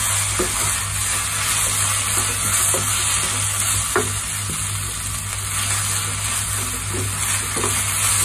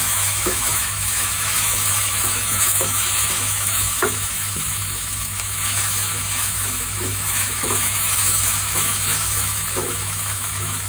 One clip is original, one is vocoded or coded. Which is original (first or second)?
first